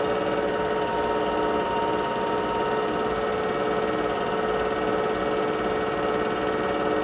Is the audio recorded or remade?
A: recorded